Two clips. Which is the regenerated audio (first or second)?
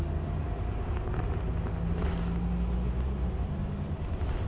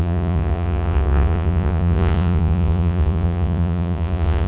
second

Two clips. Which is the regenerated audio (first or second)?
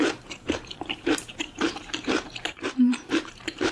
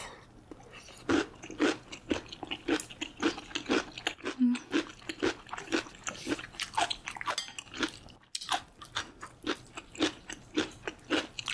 first